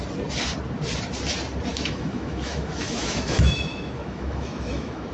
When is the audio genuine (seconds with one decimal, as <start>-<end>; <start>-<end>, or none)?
0.0-1.7